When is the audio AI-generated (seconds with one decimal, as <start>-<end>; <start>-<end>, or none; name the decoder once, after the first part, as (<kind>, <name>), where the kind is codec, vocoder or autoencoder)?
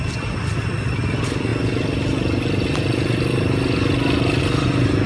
none